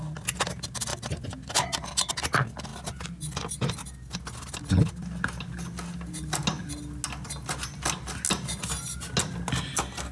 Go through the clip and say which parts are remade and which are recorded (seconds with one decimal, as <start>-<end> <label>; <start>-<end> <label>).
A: 0.0-10.1 recorded